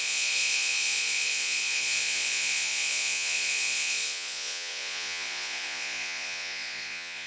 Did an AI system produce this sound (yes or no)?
yes